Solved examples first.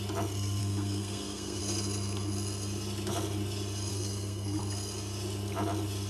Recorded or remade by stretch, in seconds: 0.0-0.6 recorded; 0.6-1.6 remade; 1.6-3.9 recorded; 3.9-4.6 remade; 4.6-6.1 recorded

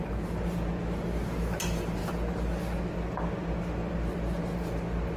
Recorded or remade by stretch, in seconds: 0.0-5.2 recorded

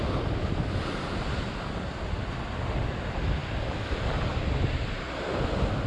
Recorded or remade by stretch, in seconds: 0.0-5.9 recorded

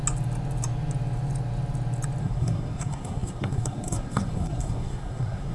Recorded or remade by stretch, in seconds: 0.0-2.2 recorded; 2.2-5.5 remade

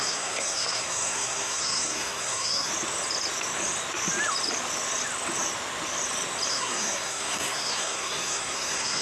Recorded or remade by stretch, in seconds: 0.0-2.7 remade; 2.7-6.5 recorded; 6.5-9.0 remade

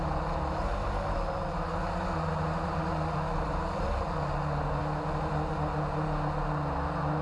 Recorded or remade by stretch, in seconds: 0.0-7.2 recorded